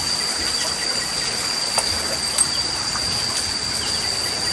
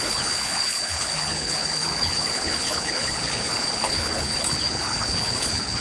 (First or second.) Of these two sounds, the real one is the first